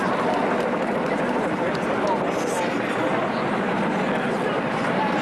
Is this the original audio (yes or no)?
yes